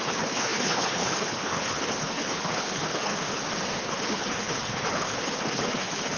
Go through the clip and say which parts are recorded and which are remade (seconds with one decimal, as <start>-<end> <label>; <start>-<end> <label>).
0.0-3.1 remade; 3.1-3.8 recorded; 3.8-6.2 remade